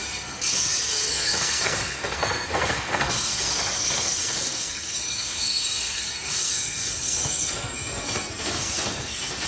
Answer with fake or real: fake